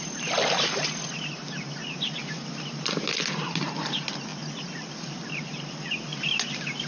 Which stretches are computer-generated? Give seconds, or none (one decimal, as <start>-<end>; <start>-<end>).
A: none